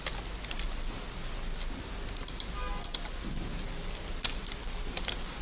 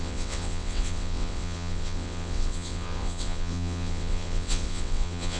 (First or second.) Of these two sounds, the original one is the first